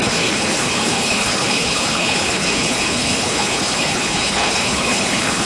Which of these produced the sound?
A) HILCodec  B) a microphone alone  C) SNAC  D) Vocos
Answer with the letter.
A